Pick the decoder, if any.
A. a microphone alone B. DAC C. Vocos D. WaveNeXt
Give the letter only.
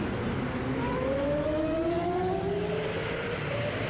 A